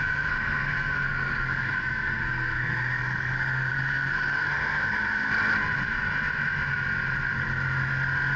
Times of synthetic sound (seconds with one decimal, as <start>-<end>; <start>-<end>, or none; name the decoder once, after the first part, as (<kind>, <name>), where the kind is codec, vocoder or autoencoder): 0.0-5.3 (codec, SNAC)